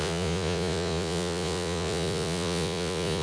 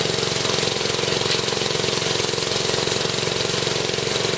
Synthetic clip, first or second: first